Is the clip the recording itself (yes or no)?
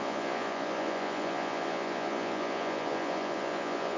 no